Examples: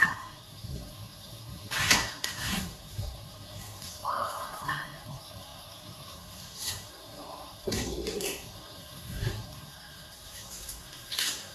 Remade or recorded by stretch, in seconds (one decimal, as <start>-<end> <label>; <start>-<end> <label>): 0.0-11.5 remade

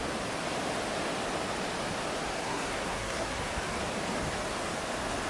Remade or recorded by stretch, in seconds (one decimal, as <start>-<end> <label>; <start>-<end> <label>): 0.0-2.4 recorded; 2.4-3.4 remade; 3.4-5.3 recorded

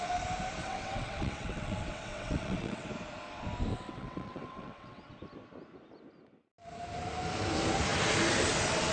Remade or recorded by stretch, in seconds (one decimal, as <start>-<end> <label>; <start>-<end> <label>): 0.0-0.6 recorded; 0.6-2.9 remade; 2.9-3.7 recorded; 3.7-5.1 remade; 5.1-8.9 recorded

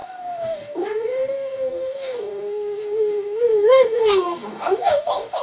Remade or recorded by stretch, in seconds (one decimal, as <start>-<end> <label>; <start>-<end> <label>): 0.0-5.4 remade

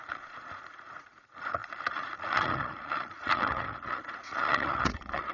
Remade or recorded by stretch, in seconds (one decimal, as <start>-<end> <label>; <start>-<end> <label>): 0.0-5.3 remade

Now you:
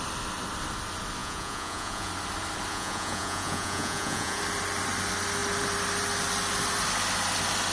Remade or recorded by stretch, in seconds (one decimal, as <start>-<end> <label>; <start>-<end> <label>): 0.0-1.2 recorded; 1.2-2.1 remade; 2.1-2.7 recorded; 2.7-4.4 remade; 4.4-7.7 recorded

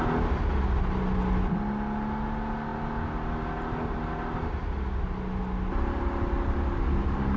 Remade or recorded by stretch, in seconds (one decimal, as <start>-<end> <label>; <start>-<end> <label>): 0.0-7.4 recorded

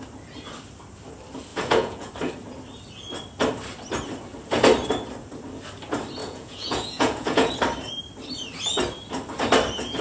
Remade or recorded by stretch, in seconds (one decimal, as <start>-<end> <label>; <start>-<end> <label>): 0.0-1.5 recorded; 1.5-2.1 remade; 2.1-6.2 recorded; 6.2-7.5 remade; 7.5-10.0 recorded